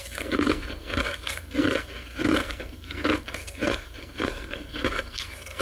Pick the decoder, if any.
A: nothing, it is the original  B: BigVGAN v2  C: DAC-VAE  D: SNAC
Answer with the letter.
D